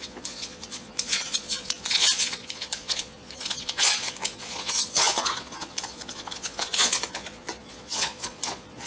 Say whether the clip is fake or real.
fake